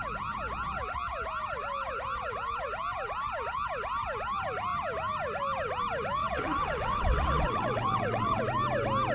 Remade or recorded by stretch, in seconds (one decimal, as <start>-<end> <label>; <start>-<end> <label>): 0.0-6.2 recorded; 6.2-8.4 remade; 8.4-9.1 recorded